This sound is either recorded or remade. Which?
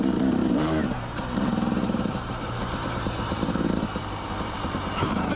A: remade